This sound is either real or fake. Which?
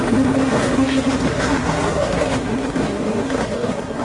fake